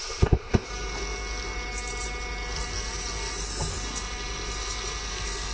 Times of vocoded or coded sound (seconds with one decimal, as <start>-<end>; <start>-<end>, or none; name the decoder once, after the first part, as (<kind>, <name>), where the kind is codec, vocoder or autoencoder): 0.0-0.7 (codec, ZipCodec)